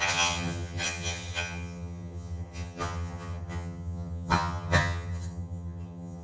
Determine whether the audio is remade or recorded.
remade